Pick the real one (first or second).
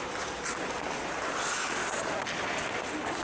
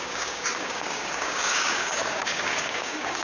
first